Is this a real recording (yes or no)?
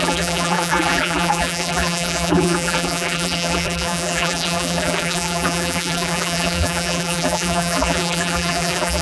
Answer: no